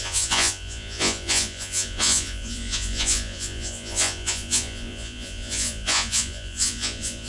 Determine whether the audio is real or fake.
fake